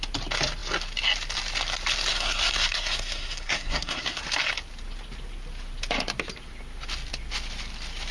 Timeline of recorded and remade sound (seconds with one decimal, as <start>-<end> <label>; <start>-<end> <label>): 0.0-2.1 recorded; 2.1-4.2 remade; 4.2-8.1 recorded